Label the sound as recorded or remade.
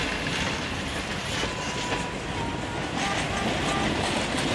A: recorded